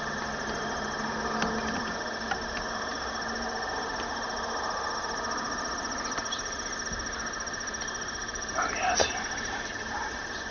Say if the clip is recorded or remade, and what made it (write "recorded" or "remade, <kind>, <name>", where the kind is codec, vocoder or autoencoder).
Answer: recorded